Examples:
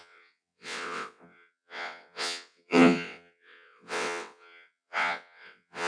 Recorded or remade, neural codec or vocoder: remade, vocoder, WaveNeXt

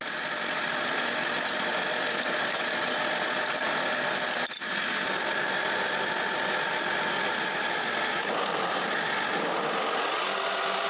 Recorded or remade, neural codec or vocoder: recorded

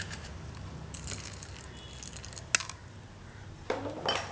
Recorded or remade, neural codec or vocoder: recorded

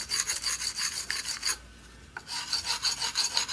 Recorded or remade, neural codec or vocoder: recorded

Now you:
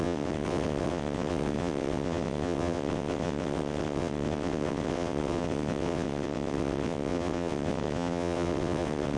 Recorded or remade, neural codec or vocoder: remade, vocoder, WaveNeXt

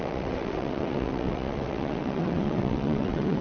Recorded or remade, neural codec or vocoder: remade, vocoder, WaveNeXt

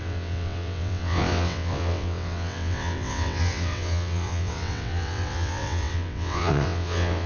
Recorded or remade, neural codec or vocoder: remade, vocoder, WaveNeXt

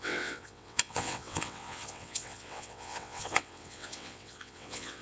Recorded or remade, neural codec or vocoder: remade, vocoder, WaveNeXt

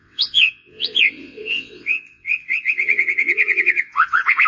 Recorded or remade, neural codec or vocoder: remade, vocoder, WaveNeXt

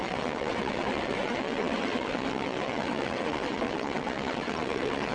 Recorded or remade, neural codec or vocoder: remade, vocoder, WaveNeXt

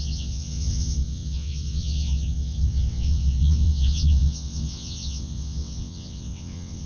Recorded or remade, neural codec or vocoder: remade, vocoder, WaveNeXt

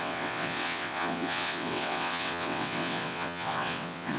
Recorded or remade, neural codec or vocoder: remade, vocoder, WaveNeXt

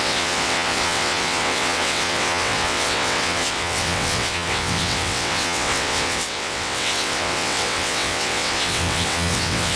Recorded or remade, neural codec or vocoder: remade, vocoder, WaveNeXt